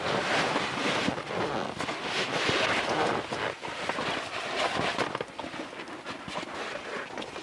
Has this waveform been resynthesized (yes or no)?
no